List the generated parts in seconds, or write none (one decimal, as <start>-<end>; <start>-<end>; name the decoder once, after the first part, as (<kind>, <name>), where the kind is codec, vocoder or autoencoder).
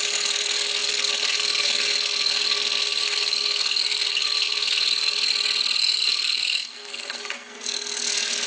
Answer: 0.0-5.3 (codec, SNAC); 5.8-8.5